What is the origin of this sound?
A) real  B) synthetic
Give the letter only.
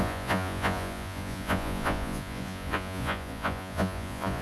B